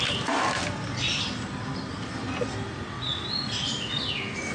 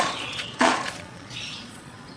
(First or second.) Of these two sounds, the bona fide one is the first